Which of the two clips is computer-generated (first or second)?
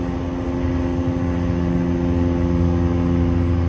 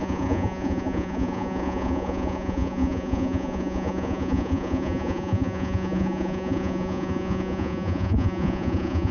second